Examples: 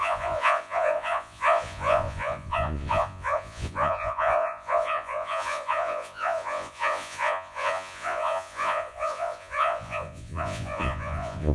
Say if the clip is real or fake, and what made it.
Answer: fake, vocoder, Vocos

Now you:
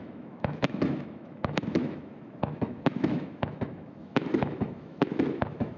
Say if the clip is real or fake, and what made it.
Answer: fake, autoencoder, DAC-VAE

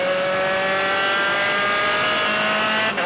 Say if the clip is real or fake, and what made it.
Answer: real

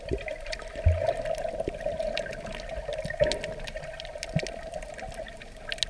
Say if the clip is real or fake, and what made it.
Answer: real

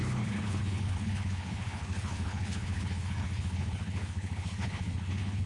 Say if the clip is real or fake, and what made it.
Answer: fake, codec, HILCodec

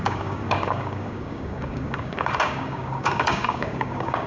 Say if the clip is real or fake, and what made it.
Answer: fake, codec, DAC